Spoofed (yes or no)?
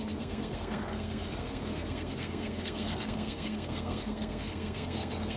yes